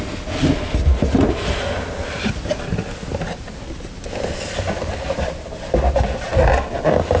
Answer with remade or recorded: recorded